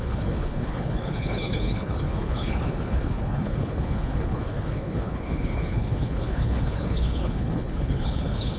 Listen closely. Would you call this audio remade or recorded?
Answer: remade